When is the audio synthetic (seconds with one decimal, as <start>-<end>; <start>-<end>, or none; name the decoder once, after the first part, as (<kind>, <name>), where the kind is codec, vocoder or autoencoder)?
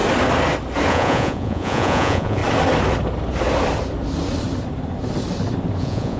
0.9-2.4 (vocoder, Vocos); 5.8-6.2